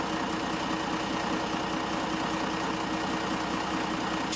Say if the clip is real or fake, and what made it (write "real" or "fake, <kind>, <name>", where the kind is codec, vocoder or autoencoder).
real